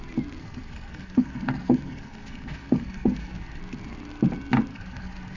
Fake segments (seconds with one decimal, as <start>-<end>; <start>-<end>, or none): 0.4-3.6; 4.7-5.4